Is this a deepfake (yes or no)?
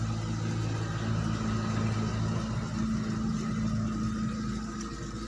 no